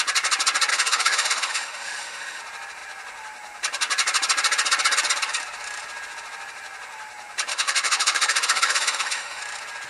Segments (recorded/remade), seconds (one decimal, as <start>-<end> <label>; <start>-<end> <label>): 0.0-0.7 recorded; 0.7-2.4 remade; 2.4-7.5 recorded; 7.5-9.4 remade; 9.4-9.9 recorded